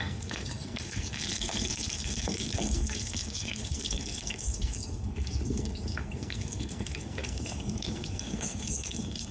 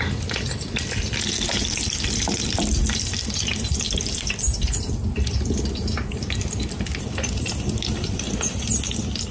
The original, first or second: second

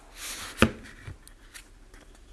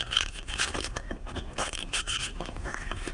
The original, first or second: first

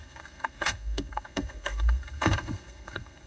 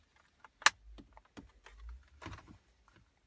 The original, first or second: second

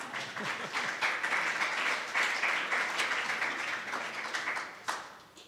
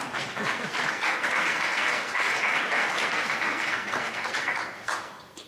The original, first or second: first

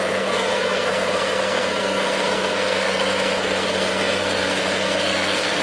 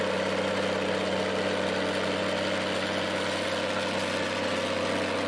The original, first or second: second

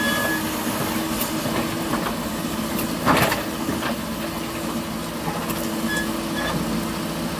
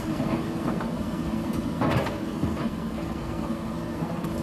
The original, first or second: first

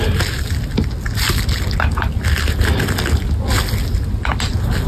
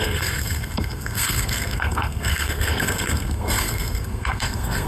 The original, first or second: first